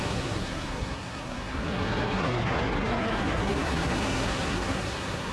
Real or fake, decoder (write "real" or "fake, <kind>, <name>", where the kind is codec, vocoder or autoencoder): fake, codec, SNAC